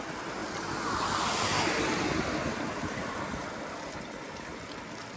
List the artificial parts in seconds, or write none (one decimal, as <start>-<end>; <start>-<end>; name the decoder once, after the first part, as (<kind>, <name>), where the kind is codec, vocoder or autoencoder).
none